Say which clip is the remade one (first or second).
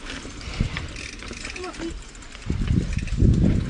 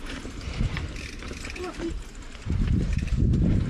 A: second